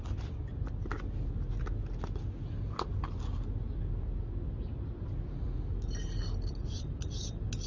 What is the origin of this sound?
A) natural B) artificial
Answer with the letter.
A